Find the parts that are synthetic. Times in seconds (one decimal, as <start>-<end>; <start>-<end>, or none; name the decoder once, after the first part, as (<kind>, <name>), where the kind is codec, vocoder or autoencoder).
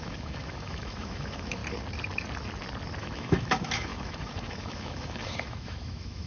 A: 0.0-1.6 (autoencoder, DAC-VAE); 3.0-6.3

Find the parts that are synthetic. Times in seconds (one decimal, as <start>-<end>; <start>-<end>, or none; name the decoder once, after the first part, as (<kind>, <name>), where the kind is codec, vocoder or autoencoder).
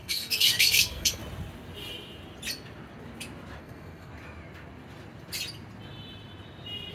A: 0.0-1.2 (codec, SNAC); 3.6-4.1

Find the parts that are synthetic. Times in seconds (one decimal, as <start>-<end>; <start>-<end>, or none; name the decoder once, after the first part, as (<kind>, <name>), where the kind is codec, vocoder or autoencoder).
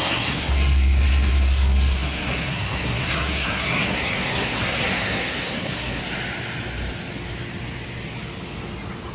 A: 0.0-6.0 (codec, SNAC)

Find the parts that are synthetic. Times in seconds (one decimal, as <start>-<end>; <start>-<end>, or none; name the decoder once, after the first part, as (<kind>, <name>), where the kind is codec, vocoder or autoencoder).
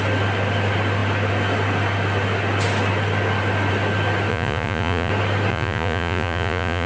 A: 4.3-5.1 (vocoder, Vocos); 5.5-6.9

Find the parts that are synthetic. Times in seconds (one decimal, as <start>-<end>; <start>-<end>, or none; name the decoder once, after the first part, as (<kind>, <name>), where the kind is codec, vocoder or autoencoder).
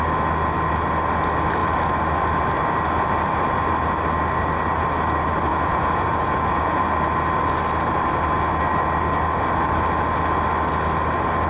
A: 5.5-6.8 (vocoder, Vocos)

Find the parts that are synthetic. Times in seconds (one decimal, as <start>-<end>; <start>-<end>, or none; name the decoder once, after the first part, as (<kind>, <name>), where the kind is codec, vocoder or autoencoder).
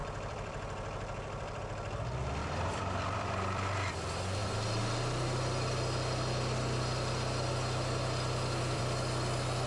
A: 0.0-1.6 (vocoder, BigVGAN v2); 2.4-3.9; 4.4-8.8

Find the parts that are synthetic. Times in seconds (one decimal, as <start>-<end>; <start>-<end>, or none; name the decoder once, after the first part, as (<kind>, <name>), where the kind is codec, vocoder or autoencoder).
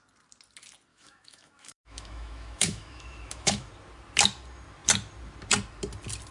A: 0.9-3.7 (autoencoder, DAC-VAE)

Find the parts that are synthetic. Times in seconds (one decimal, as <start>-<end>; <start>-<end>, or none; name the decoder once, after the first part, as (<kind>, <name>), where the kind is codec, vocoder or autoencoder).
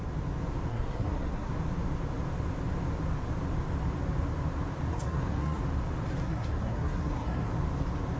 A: 0.7-1.5 (codec, SNAC); 4.9-5.6; 6.2-7.5